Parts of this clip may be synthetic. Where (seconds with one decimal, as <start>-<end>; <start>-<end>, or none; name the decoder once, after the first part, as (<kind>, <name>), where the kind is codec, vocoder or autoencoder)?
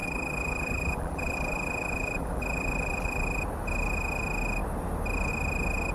0.0-3.4 (vocoder, BigVGAN v2)